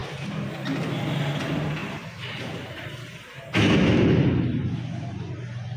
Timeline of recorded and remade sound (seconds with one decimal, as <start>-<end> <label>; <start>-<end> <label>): 0.0-5.8 recorded